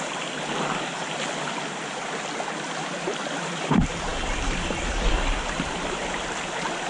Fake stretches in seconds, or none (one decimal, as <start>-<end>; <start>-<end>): none